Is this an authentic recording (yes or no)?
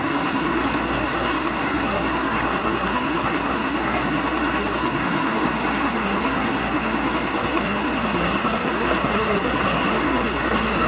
no